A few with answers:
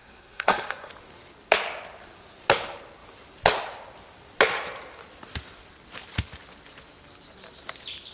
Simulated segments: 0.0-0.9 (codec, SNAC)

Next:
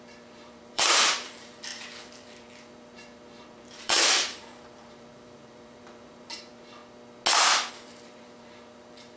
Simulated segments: 0.0-6.8 (vocoder, BigVGAN v2); 7.7-9.2

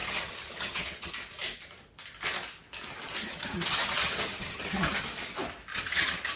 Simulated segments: 0.0-1.1 (vocoder, HiFi-GAN); 3.2-5.0; 5.7-6.4

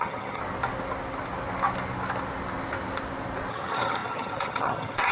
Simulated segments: 0.0-0.4 (vocoder, HiFi-GAN); 3.5-5.1